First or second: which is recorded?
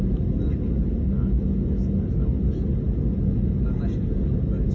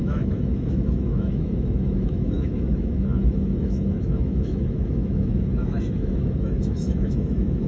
first